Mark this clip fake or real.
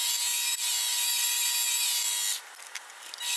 real